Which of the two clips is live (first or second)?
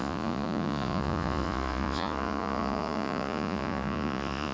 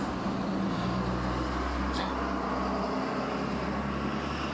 second